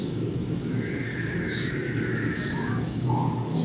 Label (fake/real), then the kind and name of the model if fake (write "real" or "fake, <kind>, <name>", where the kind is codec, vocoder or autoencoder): fake, codec, DAC